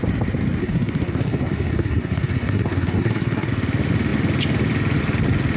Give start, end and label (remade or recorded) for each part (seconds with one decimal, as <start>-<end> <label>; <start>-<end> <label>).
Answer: 0.0-0.6 recorded; 0.6-3.5 remade; 3.5-5.6 recorded